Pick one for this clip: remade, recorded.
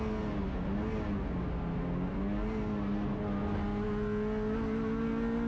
recorded